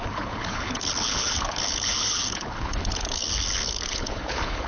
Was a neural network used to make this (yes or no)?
yes